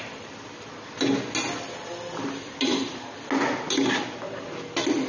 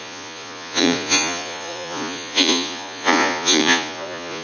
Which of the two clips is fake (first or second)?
second